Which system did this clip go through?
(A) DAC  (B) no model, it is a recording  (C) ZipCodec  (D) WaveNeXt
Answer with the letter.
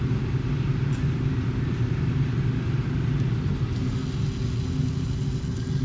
B